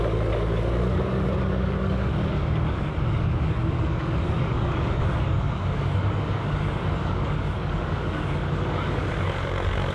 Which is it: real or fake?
fake